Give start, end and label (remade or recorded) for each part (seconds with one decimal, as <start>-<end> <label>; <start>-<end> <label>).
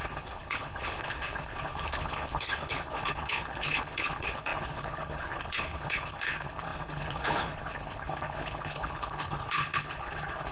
0.0-10.5 remade